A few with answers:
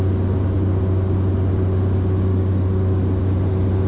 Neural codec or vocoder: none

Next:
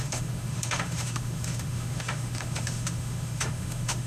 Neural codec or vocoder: autoencoder, DAC-VAE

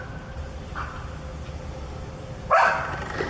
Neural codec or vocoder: none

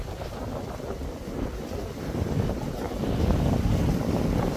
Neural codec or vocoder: none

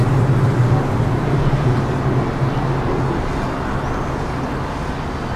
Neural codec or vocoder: none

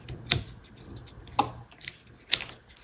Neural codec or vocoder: none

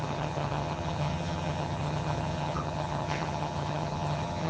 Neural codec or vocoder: vocoder, HiFi-GAN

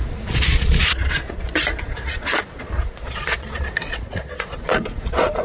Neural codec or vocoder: vocoder, Vocos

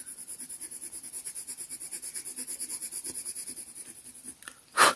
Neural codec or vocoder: none